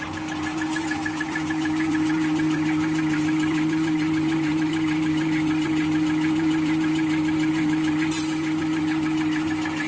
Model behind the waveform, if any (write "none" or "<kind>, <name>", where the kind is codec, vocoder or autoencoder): vocoder, BigVGAN v2